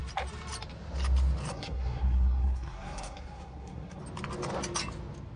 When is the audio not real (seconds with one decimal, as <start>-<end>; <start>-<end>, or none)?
1.5-4.0

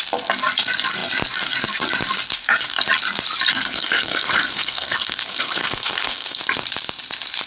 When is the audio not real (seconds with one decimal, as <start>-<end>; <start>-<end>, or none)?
3.5-6.4